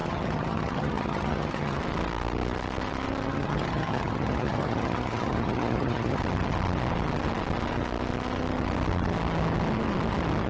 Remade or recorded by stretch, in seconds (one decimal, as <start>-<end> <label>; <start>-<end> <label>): 0.0-1.8 remade; 1.8-3.3 recorded; 3.3-6.2 remade; 6.2-10.5 recorded